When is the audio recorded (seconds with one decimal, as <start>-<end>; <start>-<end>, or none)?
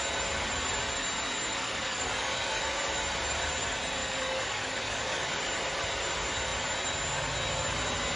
0.0-1.5; 2.6-4.0; 5.3-8.2